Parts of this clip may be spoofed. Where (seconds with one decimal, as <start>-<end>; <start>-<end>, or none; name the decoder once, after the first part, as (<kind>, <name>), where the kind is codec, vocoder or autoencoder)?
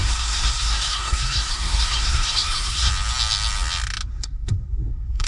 0.0-2.9 (codec, SNAC); 4.1-5.3